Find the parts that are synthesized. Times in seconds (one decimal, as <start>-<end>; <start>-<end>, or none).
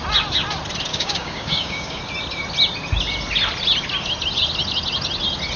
0.9-2.0